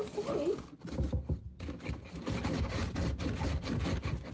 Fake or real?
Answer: real